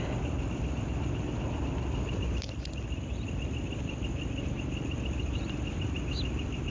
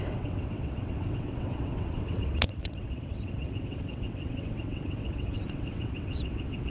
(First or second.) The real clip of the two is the first